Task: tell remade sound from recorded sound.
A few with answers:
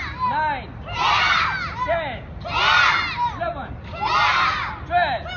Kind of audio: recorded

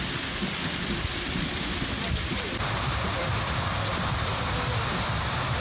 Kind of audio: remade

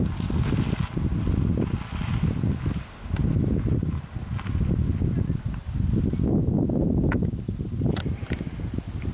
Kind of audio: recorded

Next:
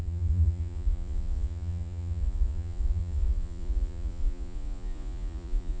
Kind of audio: remade